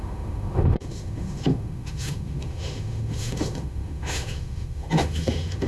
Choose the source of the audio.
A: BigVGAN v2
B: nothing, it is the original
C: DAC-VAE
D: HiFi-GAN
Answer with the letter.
C